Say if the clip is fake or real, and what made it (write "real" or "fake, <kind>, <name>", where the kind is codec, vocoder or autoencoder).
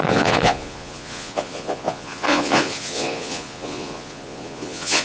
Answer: fake, vocoder, Vocos